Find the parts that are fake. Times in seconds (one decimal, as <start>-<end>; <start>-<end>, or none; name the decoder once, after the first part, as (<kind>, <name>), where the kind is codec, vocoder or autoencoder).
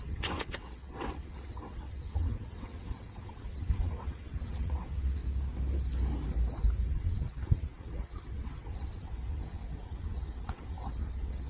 0.0-5.2 (vocoder, WaveNeXt); 6.9-11.5